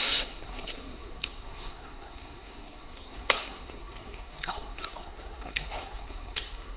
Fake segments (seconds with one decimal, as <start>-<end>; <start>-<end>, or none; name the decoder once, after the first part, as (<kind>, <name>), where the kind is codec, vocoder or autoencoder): 0.0-6.8 (codec, SNAC)